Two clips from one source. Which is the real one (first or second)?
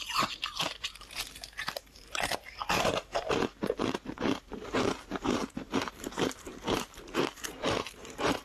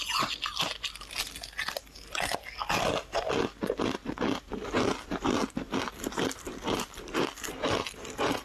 second